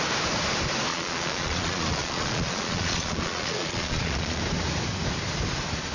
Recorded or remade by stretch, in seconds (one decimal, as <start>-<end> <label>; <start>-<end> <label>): 0.0-0.9 recorded; 0.9-4.4 remade; 4.4-5.9 recorded